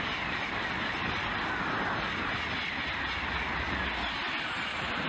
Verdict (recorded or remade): recorded